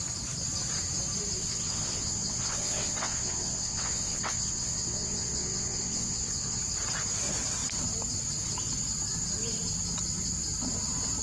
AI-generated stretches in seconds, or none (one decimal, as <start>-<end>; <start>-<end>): 1.4-6.6